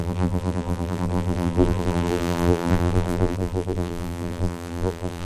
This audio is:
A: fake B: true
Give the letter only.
A